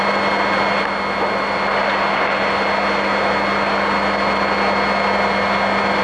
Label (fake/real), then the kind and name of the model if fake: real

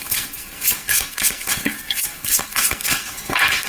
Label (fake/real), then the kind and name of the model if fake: fake, codec, SNAC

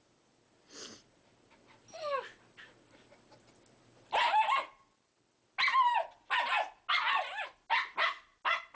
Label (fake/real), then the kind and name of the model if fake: real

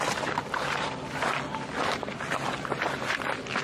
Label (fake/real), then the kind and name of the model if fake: real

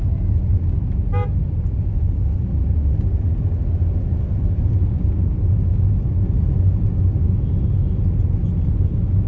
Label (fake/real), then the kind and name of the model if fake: real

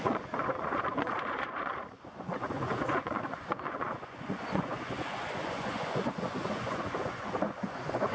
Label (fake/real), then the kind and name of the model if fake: fake, vocoder, Vocos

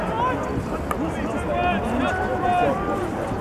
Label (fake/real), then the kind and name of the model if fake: real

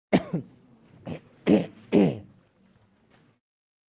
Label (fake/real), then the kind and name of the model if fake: real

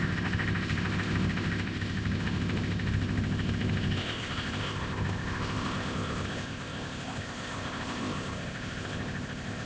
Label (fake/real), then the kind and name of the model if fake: fake, codec, ZipCodec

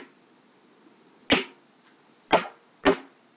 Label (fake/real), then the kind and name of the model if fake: real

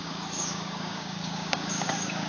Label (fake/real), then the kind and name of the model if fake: fake, codec, DAC